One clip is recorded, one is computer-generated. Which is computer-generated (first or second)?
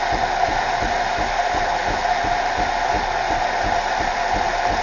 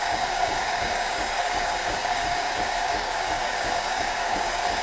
second